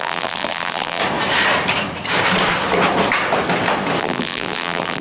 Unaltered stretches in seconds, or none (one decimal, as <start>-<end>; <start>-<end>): 1.0-4.0